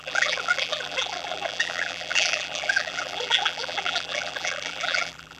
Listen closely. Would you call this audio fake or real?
fake